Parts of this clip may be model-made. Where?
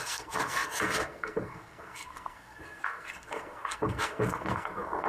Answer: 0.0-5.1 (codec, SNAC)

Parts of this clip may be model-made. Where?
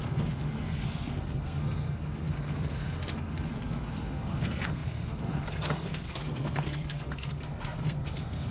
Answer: 0.0-8.5 (codec, SNAC)